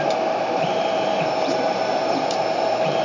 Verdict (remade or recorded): remade